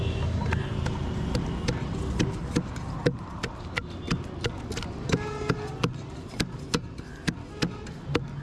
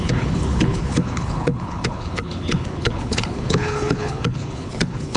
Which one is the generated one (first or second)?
second